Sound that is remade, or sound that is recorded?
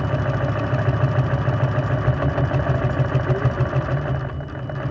recorded